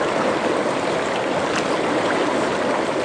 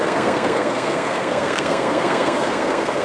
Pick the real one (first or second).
first